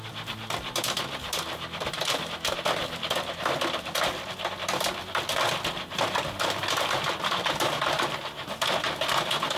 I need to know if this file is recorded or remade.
remade